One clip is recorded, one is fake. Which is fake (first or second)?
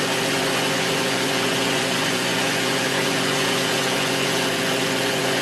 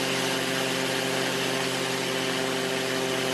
first